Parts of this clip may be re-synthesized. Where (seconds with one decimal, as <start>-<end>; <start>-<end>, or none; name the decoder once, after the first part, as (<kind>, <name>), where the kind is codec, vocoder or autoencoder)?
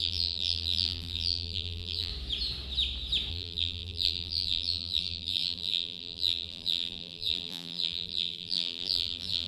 0.0-2.1 (vocoder, BigVGAN v2); 3.3-9.5